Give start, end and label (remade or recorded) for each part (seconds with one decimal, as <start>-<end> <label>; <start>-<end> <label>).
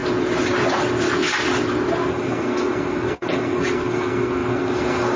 0.0-2.1 recorded; 2.1-5.2 remade